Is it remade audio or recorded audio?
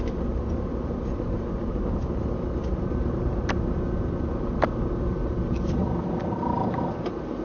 recorded